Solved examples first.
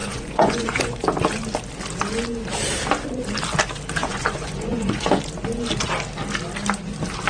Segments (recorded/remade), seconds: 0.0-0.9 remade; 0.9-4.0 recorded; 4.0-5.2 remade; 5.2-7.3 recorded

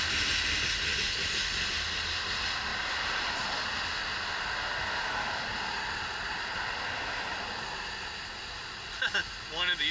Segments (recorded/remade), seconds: 0.0-2.7 recorded; 2.7-3.5 remade; 3.5-9.9 recorded

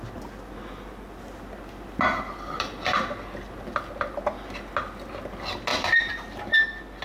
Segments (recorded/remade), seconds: 0.0-7.0 recorded

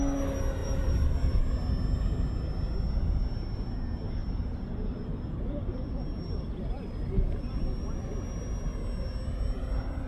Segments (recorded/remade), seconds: 0.0-0.6 recorded; 0.6-1.4 remade; 1.4-4.2 recorded; 4.2-8.1 remade; 8.1-10.1 recorded

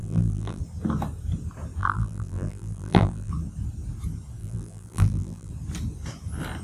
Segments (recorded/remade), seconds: 0.0-0.6 remade; 0.6-1.8 recorded; 1.8-3.3 remade; 3.3-4.4 recorded; 4.4-5.5 remade; 5.5-6.6 recorded

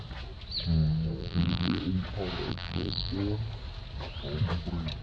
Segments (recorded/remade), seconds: 0.0-1.2 recorded; 1.2-1.8 remade; 1.8-2.5 recorded; 2.5-3.1 remade; 3.1-5.0 recorded

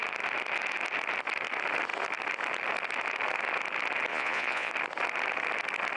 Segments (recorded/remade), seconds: 0.0-4.1 recorded; 4.1-4.7 remade; 4.7-6.0 recorded